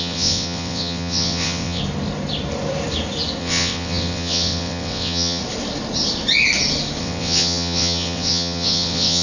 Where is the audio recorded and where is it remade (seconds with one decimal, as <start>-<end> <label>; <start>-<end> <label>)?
0.0-1.8 remade; 1.8-3.4 recorded; 3.4-5.4 remade; 5.4-7.0 recorded; 7.0-9.2 remade

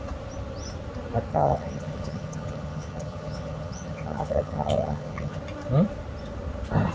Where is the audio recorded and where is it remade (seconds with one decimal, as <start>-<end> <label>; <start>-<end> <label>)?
0.0-1.3 recorded; 1.3-5.4 remade; 5.4-6.9 recorded

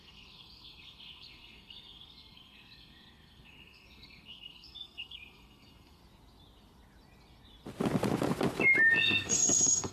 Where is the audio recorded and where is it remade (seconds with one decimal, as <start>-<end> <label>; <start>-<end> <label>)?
0.0-6.0 remade; 6.0-9.0 recorded; 9.0-9.9 remade

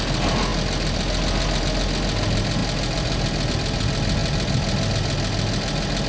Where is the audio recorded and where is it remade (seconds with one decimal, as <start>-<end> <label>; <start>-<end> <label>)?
0.0-6.1 recorded

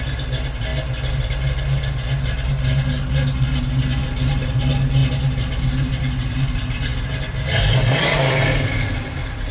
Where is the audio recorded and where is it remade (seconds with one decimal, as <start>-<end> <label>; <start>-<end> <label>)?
0.0-9.5 recorded

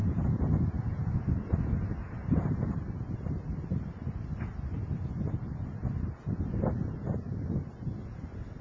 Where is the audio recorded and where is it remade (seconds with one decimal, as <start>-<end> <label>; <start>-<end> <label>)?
0.0-1.3 remade; 1.3-8.6 recorded

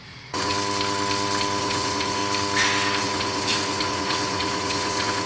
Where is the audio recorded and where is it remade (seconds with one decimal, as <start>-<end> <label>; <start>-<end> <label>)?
0.0-0.5 remade; 0.5-1.6 recorded; 1.6-2.2 remade; 2.2-3.0 recorded; 3.0-5.3 remade